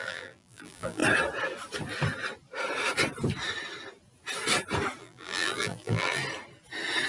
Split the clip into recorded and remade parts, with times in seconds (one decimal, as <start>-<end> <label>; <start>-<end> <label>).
0.0-1.0 remade; 1.0-5.0 recorded; 5.0-6.2 remade; 6.2-7.1 recorded